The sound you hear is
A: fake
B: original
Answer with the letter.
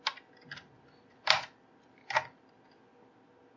B